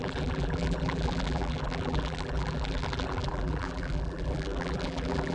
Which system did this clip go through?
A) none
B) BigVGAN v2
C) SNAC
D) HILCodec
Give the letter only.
B